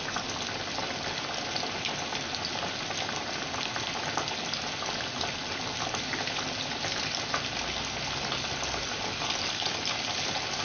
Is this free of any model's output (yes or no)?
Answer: yes